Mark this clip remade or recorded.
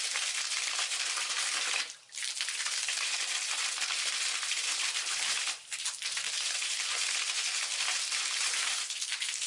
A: remade